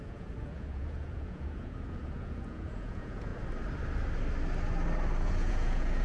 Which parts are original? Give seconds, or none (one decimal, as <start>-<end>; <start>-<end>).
3.3-5.2